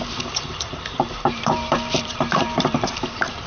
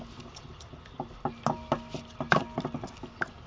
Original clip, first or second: second